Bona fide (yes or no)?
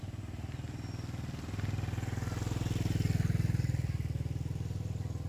yes